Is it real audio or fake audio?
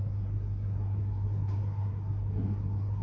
fake